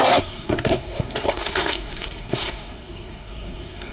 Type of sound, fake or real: fake